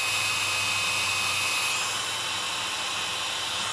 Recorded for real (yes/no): yes